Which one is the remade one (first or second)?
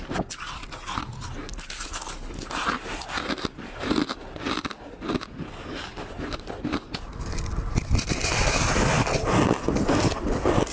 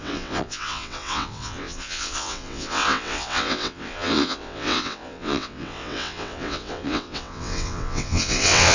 second